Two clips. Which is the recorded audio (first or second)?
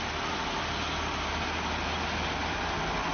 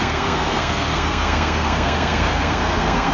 first